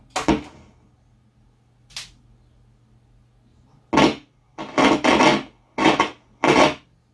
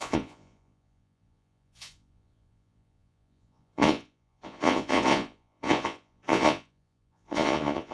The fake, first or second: second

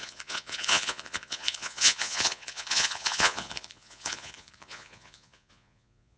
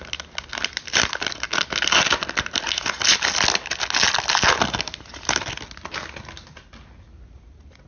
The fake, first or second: first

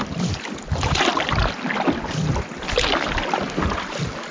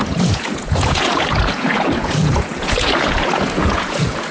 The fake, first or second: second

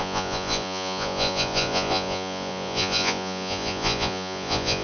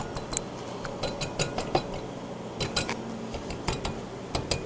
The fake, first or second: first